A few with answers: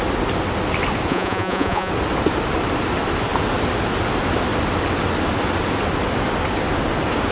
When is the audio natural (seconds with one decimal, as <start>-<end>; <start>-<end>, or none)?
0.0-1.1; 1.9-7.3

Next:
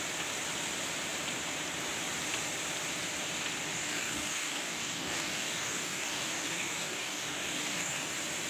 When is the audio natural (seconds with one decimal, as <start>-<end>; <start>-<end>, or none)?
0.0-3.7; 8.1-8.5

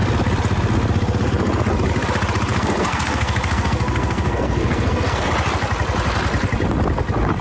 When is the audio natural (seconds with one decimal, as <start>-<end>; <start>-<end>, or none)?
0.0-2.5; 5.3-7.4